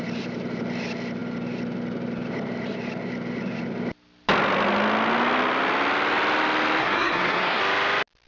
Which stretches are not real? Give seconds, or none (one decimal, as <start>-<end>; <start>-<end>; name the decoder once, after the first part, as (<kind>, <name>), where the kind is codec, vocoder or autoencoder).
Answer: 6.8-7.6 (codec, SNAC)